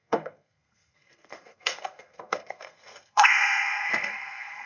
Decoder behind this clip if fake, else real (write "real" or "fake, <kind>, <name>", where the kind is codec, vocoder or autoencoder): fake, codec, SNAC